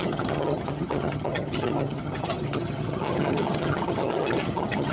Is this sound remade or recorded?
remade